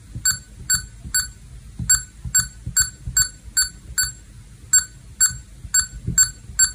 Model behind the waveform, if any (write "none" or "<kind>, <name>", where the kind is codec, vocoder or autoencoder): none